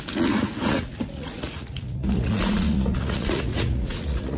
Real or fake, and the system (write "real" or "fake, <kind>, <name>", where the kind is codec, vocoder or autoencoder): fake, vocoder, Vocos